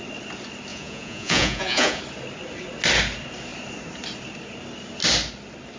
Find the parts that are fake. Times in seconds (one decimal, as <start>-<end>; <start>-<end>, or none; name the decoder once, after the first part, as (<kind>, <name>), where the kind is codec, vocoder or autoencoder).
0.7-2.0 (vocoder, Vocos)